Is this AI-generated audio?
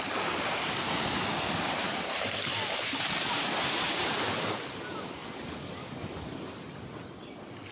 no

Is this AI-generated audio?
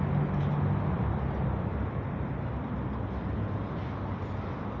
no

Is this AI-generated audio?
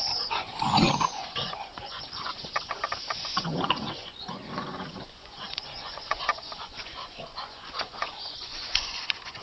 yes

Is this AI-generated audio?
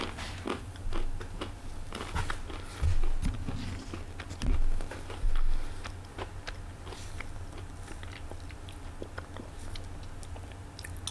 no